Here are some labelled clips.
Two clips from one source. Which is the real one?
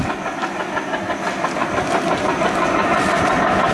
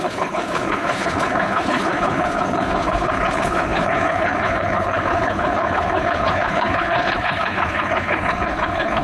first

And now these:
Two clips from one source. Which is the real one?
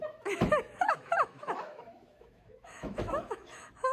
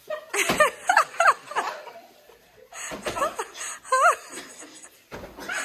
second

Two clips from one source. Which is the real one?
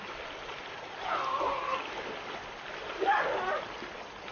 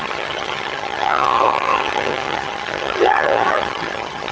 first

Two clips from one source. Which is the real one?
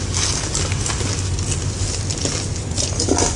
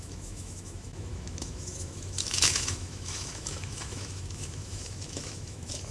first